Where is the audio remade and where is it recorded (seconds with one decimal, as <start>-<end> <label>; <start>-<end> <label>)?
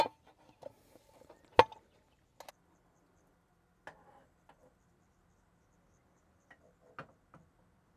0.0-8.0 recorded